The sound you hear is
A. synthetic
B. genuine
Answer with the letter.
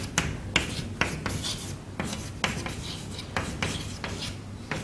B